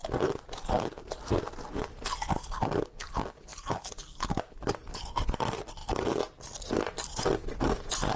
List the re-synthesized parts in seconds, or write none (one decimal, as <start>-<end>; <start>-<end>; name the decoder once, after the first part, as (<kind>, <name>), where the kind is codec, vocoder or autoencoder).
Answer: 0.0-1.3 (vocoder, BigVGAN v2)